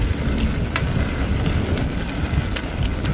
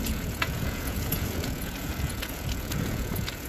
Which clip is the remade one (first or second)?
second